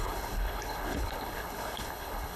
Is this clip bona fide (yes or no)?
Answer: no